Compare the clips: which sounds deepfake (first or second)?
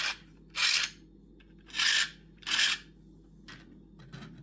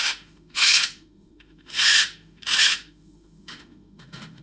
second